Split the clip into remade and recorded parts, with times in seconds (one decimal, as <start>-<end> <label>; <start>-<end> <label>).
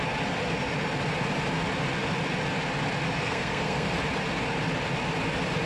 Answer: 0.0-3.2 recorded; 3.2-4.0 remade; 4.0-5.7 recorded